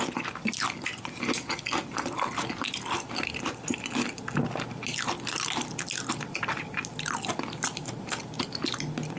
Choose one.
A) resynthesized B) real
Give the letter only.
B